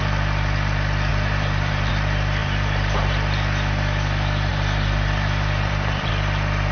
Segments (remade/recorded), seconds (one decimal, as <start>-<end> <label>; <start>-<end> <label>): 0.0-1.1 recorded; 1.1-1.9 remade; 1.9-2.4 recorded; 2.4-3.1 remade; 3.1-4.5 recorded; 4.5-6.1 remade; 6.1-6.7 recorded

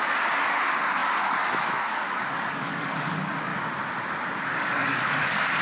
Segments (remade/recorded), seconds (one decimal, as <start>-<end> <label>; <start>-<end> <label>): 0.0-3.5 remade; 3.5-4.4 recorded; 4.4-5.6 remade